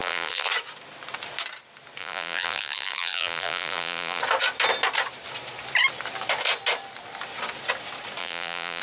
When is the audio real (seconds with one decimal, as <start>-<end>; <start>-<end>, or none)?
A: 0.5-2.0; 4.2-8.2